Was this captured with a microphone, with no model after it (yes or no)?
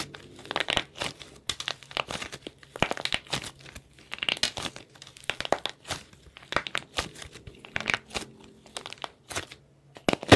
yes